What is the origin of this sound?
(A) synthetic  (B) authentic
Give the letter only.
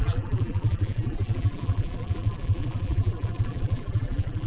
A